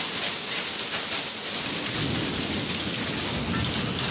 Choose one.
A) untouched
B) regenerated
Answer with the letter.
A